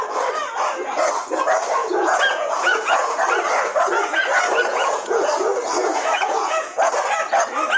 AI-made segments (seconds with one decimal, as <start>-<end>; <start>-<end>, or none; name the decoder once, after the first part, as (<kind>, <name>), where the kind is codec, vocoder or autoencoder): 1.8-3.2 (vocoder, Vocos); 4.7-5.2; 5.8-6.9